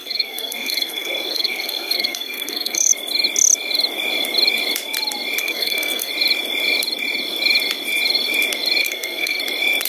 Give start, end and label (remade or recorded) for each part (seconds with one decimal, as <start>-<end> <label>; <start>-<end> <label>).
0.0-2.9 remade; 2.9-5.4 recorded; 5.4-6.1 remade; 6.1-8.8 recorded; 8.8-9.4 remade; 9.4-9.9 recorded